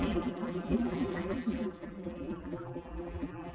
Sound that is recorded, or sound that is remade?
remade